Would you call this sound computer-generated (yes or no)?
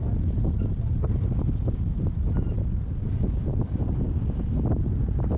no